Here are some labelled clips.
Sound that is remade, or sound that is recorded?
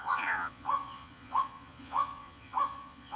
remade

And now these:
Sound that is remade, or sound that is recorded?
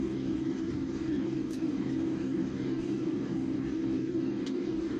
remade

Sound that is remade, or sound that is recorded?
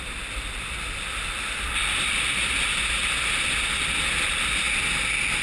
recorded